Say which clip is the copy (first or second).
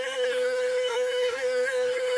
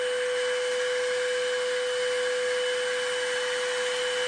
first